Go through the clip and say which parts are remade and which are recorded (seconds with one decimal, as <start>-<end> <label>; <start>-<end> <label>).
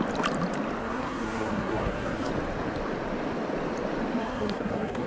0.0-0.8 recorded; 0.8-2.3 remade; 2.3-4.2 recorded; 4.2-5.1 remade